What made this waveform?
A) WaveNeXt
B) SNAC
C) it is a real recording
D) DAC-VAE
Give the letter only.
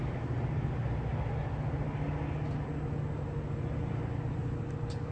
C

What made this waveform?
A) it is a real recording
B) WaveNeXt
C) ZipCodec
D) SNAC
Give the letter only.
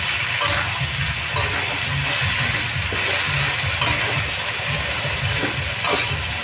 A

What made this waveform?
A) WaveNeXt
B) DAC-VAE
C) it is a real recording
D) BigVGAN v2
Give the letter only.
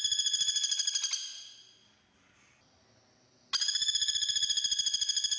C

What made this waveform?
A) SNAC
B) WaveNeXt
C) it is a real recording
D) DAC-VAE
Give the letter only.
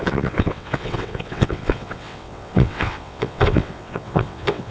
B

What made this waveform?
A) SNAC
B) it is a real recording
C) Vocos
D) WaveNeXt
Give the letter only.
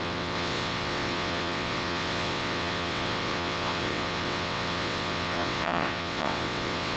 D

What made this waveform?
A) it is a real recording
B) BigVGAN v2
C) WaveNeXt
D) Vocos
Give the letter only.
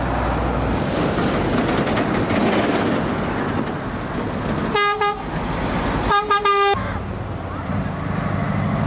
A